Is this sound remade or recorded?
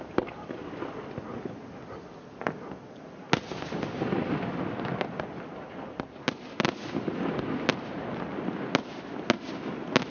recorded